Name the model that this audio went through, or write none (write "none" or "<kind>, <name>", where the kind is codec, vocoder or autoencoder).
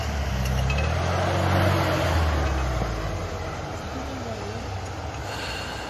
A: none